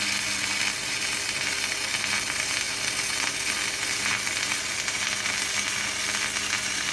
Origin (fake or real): real